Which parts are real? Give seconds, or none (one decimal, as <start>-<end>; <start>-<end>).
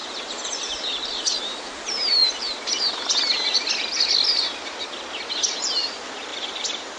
0.0-7.0